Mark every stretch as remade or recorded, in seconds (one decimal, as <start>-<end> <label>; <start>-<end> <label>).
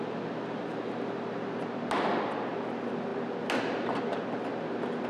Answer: 0.0-0.7 recorded; 0.7-1.4 remade; 1.4-5.1 recorded